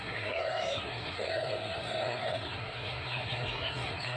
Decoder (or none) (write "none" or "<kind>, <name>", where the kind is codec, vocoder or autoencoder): codec, SNAC